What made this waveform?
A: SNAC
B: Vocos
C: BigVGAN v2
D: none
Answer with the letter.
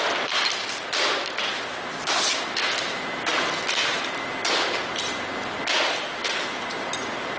C